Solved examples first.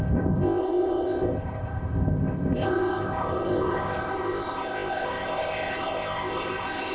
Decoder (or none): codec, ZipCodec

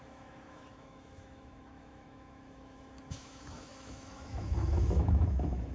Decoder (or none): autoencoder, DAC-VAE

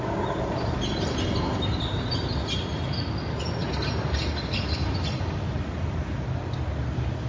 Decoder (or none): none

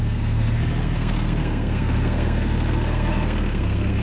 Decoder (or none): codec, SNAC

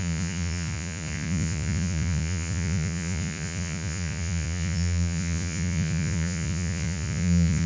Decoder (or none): vocoder, Vocos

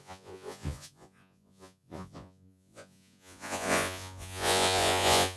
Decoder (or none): vocoder, Vocos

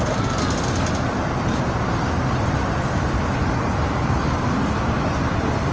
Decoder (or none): none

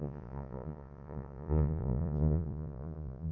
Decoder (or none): vocoder, Vocos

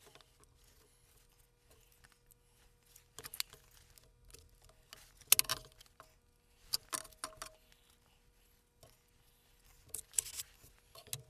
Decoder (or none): none